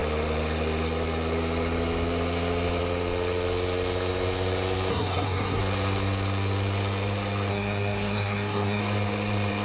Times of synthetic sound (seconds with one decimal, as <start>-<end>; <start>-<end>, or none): 4.9-5.6; 7.5-8.8